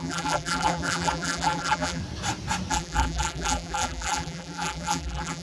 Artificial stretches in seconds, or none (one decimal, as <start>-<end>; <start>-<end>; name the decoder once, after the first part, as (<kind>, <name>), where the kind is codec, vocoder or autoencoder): 0.0-2.0 (vocoder, BigVGAN v2); 2.7-5.4